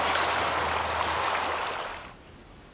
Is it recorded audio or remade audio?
recorded